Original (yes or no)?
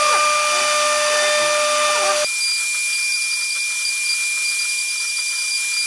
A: yes